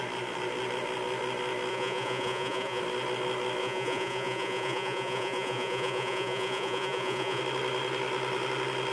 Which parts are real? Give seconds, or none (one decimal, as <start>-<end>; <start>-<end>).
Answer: 0.0-1.7; 2.8-3.6; 7.4-8.9